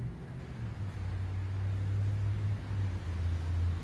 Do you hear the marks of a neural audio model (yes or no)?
no